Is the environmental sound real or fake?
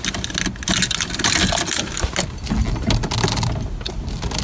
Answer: real